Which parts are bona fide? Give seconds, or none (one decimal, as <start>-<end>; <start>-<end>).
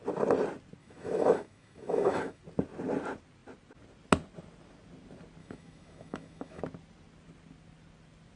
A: 0.0-0.8; 2.4-5.4; 6.6-8.4